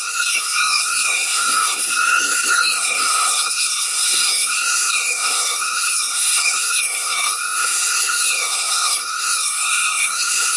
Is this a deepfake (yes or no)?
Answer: yes